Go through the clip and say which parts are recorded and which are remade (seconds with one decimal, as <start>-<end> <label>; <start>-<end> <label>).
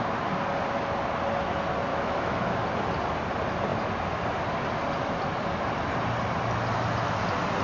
0.0-1.9 recorded; 1.9-2.6 remade; 2.6-7.6 recorded